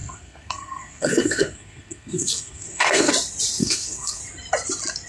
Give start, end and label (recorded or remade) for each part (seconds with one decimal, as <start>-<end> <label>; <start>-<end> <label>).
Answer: 0.0-3.1 remade; 3.1-3.6 recorded; 3.6-4.2 remade; 4.2-5.1 recorded

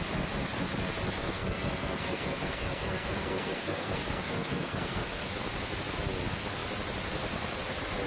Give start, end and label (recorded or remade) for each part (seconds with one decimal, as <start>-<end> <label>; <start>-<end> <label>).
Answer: 0.0-1.2 recorded; 1.2-5.3 remade; 5.3-8.1 recorded

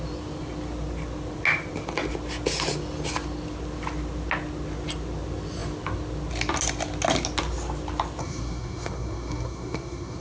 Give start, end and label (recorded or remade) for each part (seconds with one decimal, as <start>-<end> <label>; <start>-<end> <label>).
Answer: 0.0-8.2 recorded; 8.2-10.2 remade

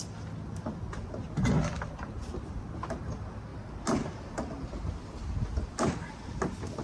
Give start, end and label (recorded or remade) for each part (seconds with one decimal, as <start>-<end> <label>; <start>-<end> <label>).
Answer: 0.0-6.8 recorded

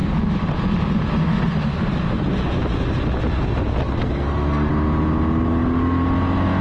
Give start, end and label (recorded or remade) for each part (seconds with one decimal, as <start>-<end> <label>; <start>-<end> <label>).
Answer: 0.0-4.0 recorded; 4.0-4.7 remade; 4.7-6.6 recorded